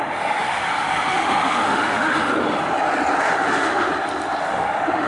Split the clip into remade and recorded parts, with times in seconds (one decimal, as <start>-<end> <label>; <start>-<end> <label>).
0.0-2.3 remade; 2.3-3.2 recorded; 3.2-3.9 remade; 3.9-4.4 recorded; 4.4-5.1 remade

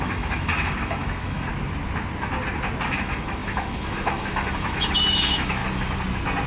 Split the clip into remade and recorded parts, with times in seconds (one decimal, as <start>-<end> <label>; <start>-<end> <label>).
0.0-1.5 remade; 1.5-3.0 recorded; 3.0-5.6 remade; 5.6-6.5 recorded

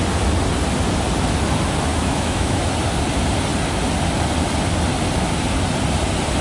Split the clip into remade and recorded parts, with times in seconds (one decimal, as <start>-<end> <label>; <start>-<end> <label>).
0.0-1.9 recorded; 1.9-2.6 remade; 2.6-6.4 recorded

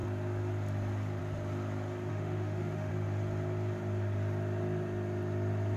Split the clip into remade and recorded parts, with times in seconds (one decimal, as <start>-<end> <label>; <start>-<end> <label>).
0.0-2.1 recorded; 2.1-2.9 remade; 2.9-5.8 recorded

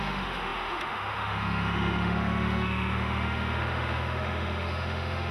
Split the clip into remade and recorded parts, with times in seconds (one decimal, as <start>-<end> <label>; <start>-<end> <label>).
0.0-5.3 remade